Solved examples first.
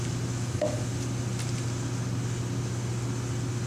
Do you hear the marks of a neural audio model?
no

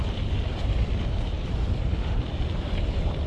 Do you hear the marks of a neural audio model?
yes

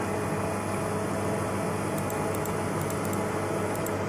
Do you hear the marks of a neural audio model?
no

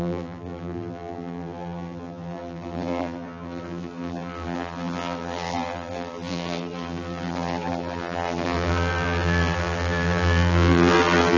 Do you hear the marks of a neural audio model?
yes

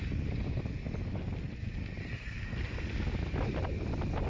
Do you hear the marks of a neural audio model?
no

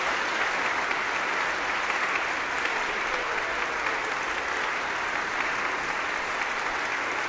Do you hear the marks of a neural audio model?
no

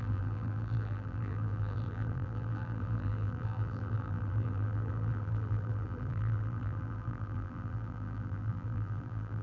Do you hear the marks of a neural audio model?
yes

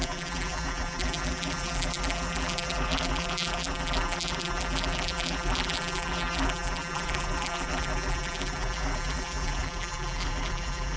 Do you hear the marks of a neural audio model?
yes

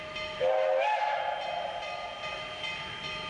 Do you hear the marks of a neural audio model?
no